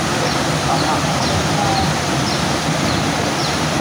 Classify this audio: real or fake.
real